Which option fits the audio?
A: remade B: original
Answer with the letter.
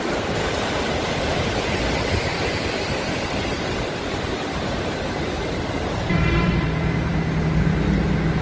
B